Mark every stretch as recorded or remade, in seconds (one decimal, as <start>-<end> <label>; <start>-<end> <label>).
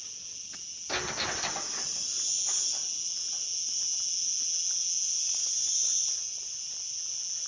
0.0-7.5 recorded